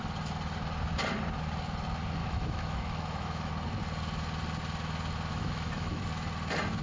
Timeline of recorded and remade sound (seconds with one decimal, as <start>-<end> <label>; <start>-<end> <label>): 0.0-2.2 recorded; 2.2-3.5 remade; 3.5-5.3 recorded; 5.3-6.0 remade; 6.0-6.8 recorded